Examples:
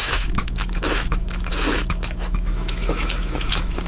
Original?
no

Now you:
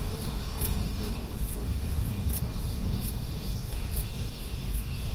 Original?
no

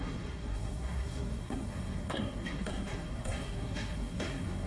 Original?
no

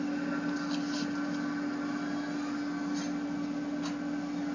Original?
yes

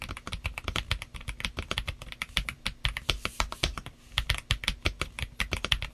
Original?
yes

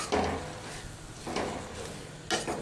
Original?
yes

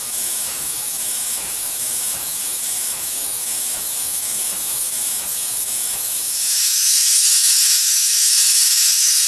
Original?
no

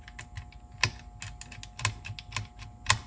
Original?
yes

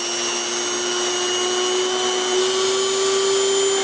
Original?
yes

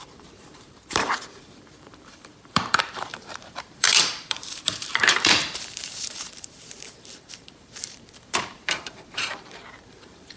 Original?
no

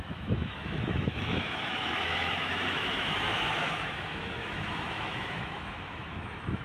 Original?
no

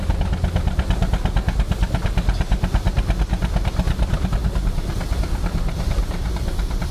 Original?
yes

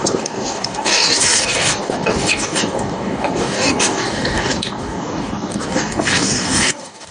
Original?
no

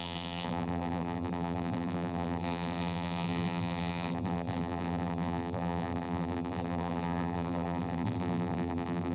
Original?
no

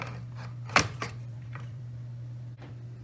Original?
no